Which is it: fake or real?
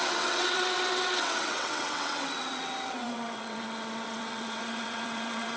fake